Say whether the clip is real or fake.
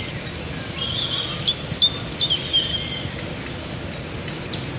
real